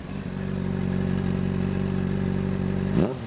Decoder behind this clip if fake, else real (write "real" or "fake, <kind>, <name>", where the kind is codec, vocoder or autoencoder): real